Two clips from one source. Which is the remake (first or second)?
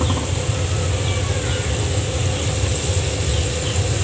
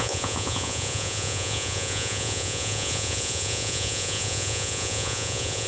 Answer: second